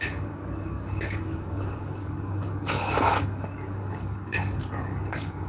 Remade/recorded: remade